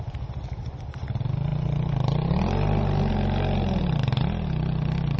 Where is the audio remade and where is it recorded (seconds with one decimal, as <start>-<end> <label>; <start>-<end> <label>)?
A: 0.0-5.2 recorded